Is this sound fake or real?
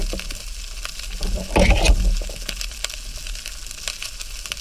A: real